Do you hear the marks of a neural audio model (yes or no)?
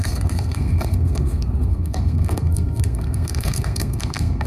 yes